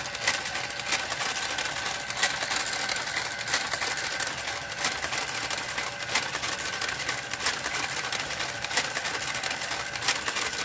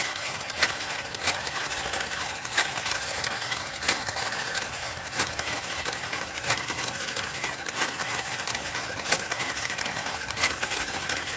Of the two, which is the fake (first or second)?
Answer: second